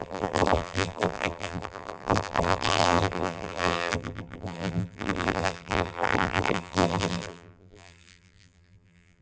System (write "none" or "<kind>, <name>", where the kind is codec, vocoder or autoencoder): vocoder, BigVGAN v2